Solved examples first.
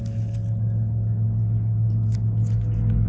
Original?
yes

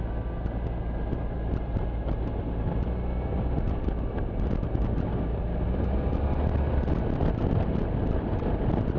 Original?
yes